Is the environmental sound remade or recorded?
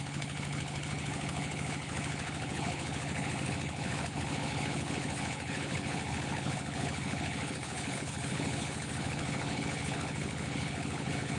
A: remade